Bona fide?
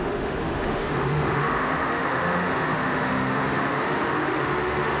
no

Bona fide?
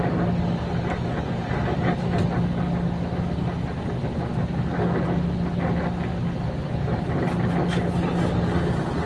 yes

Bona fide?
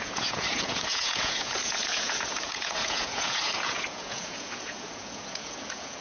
no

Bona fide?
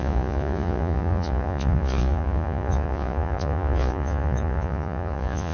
no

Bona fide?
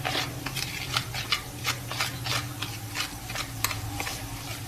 yes